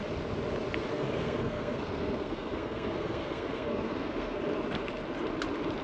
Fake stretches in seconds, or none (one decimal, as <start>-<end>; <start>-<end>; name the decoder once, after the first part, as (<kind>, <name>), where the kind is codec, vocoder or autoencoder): 0.9-4.4 (codec, SNAC)